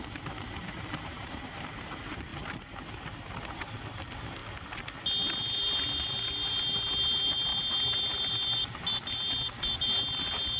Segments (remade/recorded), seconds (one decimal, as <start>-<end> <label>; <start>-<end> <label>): 0.0-4.4 remade; 4.4-5.4 recorded; 5.4-8.6 remade; 8.6-9.7 recorded; 9.7-10.6 remade